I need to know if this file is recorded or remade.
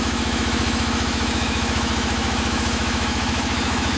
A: remade